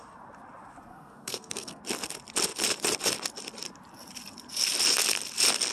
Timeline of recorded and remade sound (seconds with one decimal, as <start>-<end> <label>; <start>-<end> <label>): 0.0-0.9 recorded; 0.9-1.8 remade; 1.8-5.7 recorded